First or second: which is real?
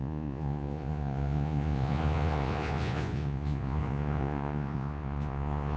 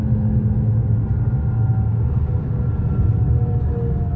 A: second